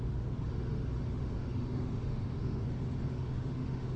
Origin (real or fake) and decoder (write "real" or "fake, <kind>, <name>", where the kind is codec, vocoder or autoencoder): fake, autoencoder, DAC-VAE